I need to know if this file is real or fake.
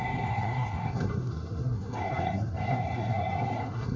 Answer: fake